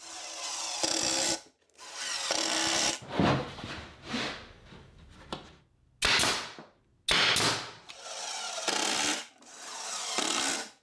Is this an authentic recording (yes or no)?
yes